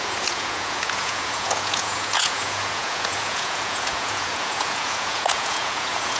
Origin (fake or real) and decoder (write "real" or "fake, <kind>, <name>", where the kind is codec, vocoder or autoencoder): fake, vocoder, Vocos